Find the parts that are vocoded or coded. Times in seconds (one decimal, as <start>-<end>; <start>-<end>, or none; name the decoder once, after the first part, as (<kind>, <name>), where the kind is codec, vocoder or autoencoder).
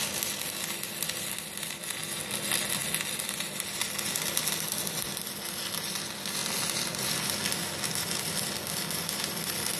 none